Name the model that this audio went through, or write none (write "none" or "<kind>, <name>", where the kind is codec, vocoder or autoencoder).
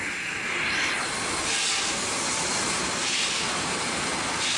none